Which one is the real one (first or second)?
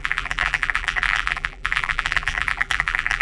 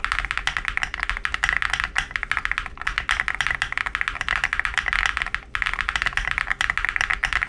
second